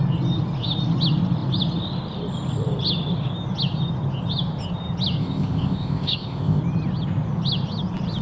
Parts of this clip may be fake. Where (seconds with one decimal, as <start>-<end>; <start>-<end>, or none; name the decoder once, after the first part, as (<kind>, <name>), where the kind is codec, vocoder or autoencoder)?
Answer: 5.2-6.6 (codec, ZipCodec)